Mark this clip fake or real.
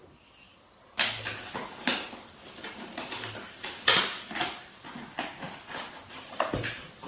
real